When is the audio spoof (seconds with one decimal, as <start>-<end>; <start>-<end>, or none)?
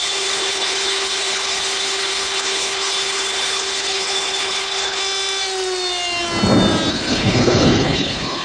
0.0-5.0; 6.9-8.4